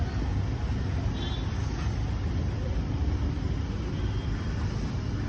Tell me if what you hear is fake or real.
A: real